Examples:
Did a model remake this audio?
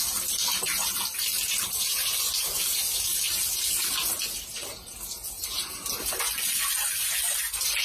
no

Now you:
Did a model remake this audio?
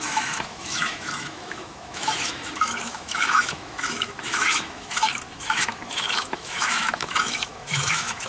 yes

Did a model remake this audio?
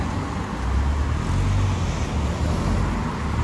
no